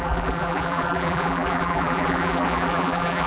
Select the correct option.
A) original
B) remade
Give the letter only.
B